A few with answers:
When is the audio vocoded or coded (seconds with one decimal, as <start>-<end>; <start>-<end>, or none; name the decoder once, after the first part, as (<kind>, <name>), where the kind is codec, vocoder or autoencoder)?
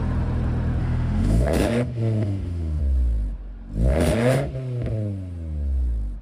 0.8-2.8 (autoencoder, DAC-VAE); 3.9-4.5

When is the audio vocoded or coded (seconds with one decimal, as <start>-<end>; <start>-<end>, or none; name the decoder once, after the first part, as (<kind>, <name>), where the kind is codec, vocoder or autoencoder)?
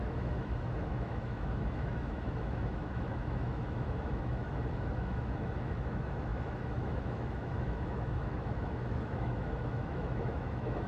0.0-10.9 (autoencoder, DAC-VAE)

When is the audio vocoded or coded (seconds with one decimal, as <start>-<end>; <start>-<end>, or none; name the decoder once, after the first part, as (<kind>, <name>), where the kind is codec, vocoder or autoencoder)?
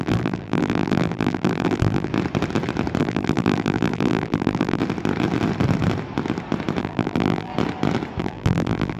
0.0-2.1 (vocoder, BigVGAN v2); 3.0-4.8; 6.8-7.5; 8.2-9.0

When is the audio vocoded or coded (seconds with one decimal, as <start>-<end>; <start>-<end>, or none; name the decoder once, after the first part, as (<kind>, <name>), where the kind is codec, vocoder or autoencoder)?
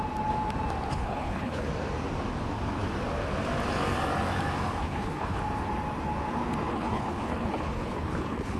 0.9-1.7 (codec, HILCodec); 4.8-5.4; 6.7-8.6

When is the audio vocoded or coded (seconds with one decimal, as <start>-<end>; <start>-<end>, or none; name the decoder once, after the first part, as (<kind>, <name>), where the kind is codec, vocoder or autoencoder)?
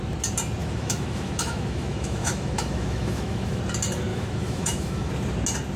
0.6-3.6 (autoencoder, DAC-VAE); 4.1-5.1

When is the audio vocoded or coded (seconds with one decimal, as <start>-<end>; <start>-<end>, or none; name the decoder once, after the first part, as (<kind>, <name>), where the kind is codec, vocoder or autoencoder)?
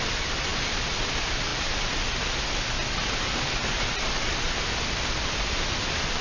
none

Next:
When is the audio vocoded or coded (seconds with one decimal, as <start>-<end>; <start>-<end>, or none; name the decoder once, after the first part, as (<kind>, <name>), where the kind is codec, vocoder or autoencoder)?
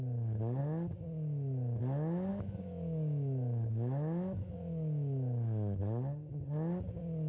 2.3-5.8 (autoencoder, DAC-VAE)